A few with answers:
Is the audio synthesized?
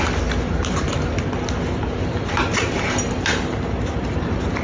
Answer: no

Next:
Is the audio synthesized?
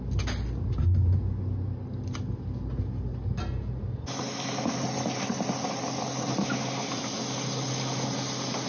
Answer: no